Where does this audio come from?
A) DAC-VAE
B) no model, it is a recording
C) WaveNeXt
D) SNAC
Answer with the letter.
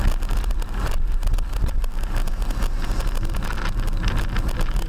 B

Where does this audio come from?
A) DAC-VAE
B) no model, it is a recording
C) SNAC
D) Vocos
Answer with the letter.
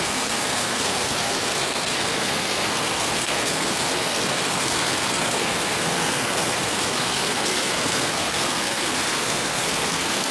C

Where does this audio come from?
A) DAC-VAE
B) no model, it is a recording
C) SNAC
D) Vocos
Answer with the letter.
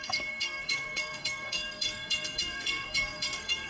C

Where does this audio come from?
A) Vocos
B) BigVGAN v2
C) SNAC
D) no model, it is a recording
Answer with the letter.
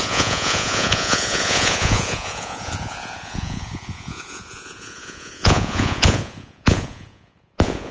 A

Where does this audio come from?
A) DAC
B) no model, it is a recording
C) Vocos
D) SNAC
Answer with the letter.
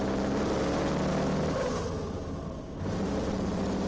B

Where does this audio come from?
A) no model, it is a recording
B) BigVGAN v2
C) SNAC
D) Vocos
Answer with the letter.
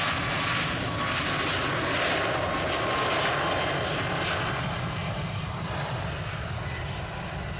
A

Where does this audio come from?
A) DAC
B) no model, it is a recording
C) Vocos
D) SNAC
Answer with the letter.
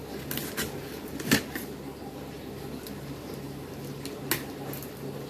B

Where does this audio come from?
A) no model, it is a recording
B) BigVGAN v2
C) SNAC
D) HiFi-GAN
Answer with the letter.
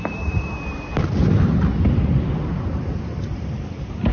B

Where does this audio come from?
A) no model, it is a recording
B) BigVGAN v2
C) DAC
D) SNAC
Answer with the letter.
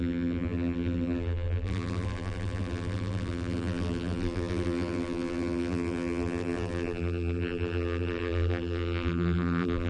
B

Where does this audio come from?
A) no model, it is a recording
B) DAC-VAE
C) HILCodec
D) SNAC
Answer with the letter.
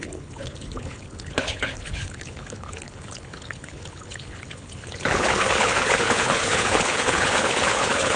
C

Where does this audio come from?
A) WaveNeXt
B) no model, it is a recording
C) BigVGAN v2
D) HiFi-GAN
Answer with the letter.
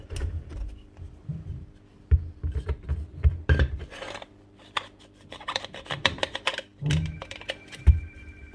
C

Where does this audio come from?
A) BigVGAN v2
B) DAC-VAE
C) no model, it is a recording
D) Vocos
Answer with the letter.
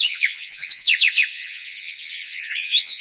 D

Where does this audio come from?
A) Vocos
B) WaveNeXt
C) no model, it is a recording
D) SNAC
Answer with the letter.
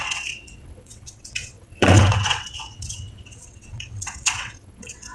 B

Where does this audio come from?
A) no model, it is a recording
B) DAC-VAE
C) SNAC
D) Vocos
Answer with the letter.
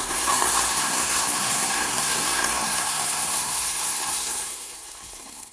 C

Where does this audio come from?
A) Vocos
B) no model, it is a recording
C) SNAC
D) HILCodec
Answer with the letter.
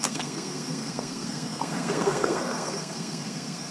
C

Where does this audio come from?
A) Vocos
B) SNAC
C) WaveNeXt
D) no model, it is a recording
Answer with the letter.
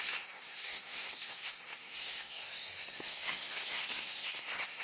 B